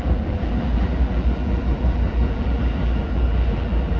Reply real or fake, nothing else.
fake